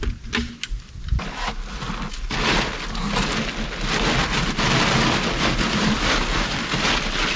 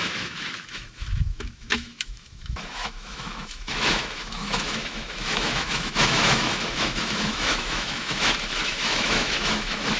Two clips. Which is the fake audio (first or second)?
second